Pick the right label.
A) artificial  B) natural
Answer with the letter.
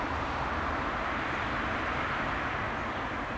B